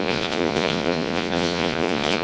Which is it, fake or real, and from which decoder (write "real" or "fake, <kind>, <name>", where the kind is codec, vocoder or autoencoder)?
fake, vocoder, Vocos